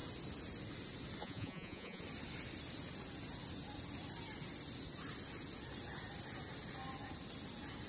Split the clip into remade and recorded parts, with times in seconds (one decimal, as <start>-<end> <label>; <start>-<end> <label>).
0.0-1.2 recorded; 1.2-2.0 remade; 2.0-7.9 recorded